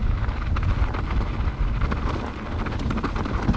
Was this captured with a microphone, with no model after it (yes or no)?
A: yes